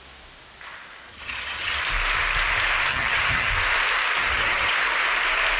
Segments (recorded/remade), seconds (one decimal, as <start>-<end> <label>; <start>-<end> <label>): 0.0-1.1 recorded; 1.1-1.8 remade; 1.8-2.9 recorded; 2.9-3.5 remade; 3.5-4.2 recorded; 4.2-4.7 remade; 4.7-5.6 recorded